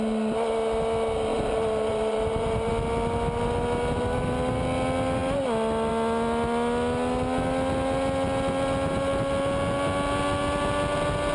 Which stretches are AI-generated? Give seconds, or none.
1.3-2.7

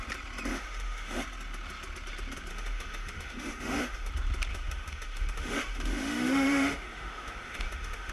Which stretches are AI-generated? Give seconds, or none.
0.5-1.2; 2.5-4.1; 4.5-8.1

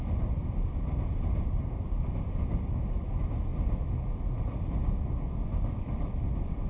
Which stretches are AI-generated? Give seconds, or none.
0.0-3.5; 4.4-6.7

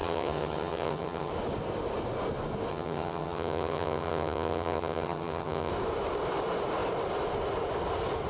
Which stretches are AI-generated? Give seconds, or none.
0.0-1.3; 2.7-5.7

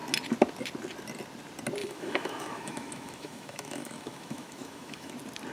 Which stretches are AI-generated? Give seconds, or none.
1.8-5.1

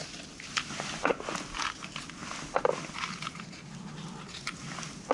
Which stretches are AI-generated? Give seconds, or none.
none